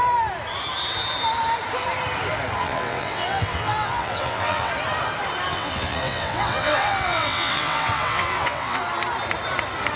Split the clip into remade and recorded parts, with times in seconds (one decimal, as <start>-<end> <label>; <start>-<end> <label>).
0.0-2.6 recorded; 2.6-4.7 remade; 4.7-5.5 recorded; 5.5-8.8 remade; 8.8-10.0 recorded